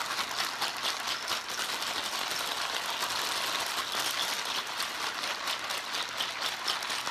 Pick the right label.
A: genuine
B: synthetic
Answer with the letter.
A